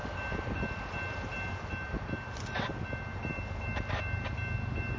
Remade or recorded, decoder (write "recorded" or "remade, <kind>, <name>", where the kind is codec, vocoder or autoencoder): recorded